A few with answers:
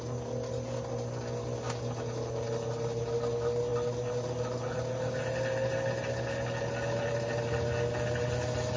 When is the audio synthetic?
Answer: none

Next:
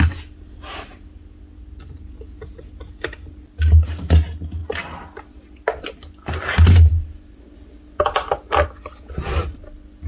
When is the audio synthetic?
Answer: none

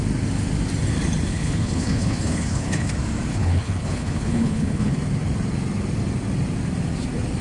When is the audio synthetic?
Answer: 1.3-2.9 (codec, HILCodec); 3.3-4.9

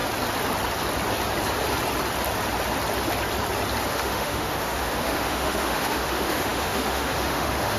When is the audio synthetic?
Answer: 3.9-7.8 (autoencoder, DAC-VAE)

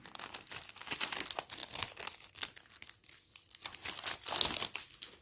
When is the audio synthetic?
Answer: none